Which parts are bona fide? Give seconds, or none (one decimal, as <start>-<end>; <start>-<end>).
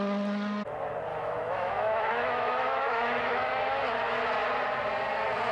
0.0-1.1; 3.5-5.5